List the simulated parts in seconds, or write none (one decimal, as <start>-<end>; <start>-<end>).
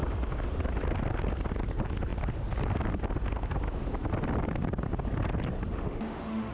5.7-6.5